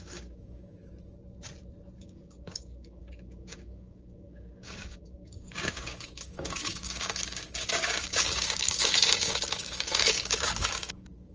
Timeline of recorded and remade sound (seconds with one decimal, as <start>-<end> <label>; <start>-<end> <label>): 0.0-0.8 remade; 0.8-2.0 recorded; 2.0-11.3 remade